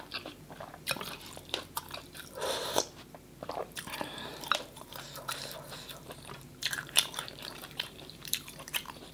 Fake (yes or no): yes